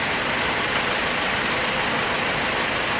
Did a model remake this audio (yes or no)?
no